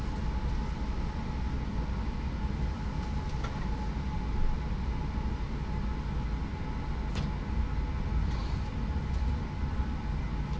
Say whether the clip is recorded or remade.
recorded